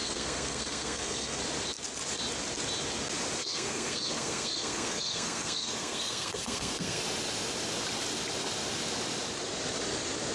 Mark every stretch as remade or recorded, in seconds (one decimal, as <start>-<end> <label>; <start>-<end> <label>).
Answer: 0.0-1.4 remade; 1.4-3.4 recorded; 3.4-7.0 remade; 7.0-10.3 recorded